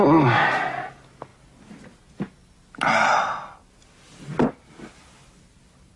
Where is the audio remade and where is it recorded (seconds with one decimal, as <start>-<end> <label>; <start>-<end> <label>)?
0.0-6.0 recorded